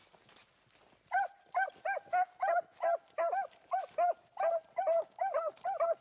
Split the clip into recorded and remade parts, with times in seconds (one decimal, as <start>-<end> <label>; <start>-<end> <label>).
0.0-6.0 recorded